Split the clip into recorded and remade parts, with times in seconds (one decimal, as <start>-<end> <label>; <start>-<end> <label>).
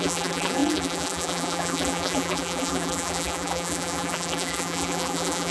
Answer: 0.0-5.5 remade